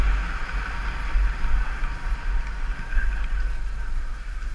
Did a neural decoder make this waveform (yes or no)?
no